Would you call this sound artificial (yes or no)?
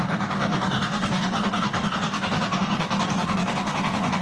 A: yes